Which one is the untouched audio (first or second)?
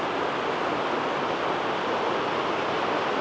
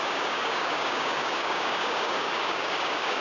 first